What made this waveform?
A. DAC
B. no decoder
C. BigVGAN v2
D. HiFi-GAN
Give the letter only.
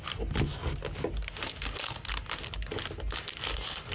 B